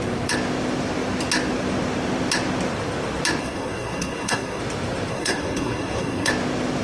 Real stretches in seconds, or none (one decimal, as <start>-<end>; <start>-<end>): 0.0-3.4; 4.6-5.1; 6.3-6.8